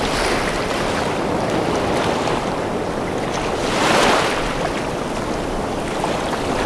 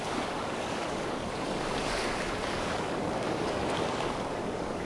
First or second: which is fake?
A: second